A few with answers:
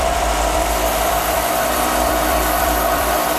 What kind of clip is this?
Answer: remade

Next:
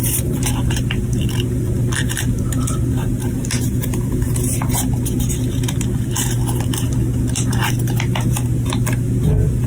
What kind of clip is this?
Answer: recorded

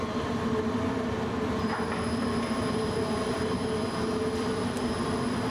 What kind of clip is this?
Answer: remade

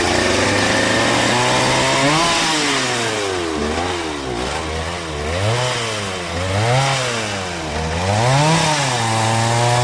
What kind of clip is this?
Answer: recorded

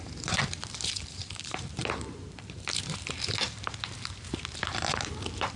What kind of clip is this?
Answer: remade